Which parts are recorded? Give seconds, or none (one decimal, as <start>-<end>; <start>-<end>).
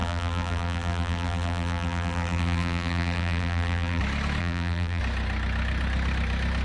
4.0-4.4; 5.0-6.6